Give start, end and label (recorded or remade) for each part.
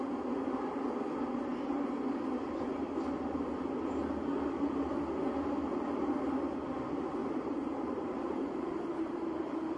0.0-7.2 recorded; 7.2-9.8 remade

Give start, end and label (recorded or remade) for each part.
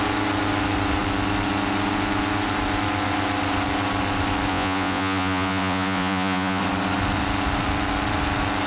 0.0-4.5 recorded; 4.5-6.6 remade; 6.6-8.7 recorded